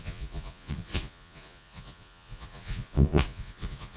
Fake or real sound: fake